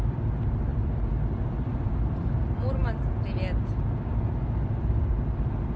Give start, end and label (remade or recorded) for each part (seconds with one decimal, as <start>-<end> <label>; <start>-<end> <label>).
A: 0.0-0.7 recorded; 0.7-1.2 remade; 1.2-1.7 recorded; 1.7-2.4 remade; 2.4-5.8 recorded